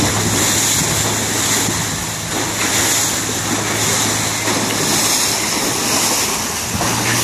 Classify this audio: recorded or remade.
recorded